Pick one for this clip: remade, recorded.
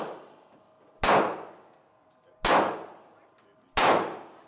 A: recorded